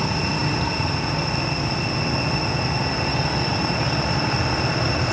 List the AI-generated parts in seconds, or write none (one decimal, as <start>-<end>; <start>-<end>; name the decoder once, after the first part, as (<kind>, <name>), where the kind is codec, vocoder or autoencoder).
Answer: none